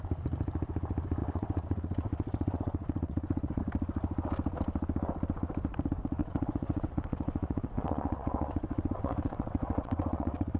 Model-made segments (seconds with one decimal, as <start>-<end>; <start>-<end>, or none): 1.2-3.6; 6.2-10.6